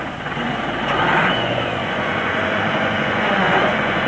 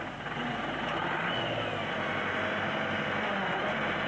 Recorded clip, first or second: second